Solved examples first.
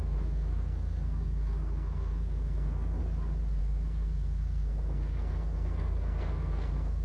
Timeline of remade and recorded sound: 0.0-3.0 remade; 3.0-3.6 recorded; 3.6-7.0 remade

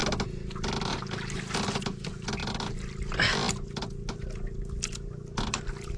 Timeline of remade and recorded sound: 0.0-6.0 recorded

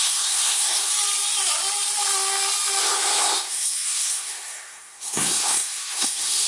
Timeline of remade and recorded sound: 0.0-0.9 remade; 0.9-2.8 recorded; 2.8-6.5 remade

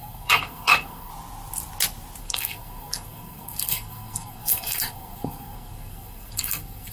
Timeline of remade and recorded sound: 0.0-1.1 remade; 1.1-2.2 recorded; 2.2-6.9 remade

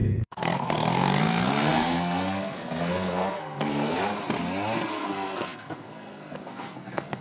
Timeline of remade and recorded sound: 0.0-4.1 remade; 4.1-4.9 recorded; 4.9-7.2 remade

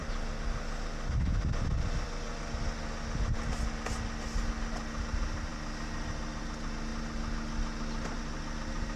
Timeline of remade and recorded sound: 0.0-9.0 recorded

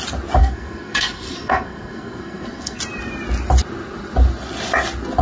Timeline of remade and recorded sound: 0.0-0.4 recorded; 0.4-2.8 remade; 2.8-5.2 recorded

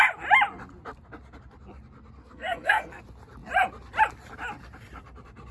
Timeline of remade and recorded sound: 0.0-2.2 recorded; 2.2-3.0 remade; 3.0-5.5 recorded